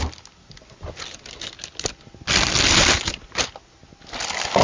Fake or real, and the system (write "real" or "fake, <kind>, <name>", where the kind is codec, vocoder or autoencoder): real